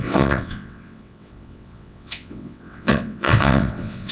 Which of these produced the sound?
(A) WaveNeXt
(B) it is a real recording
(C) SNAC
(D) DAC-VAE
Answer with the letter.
A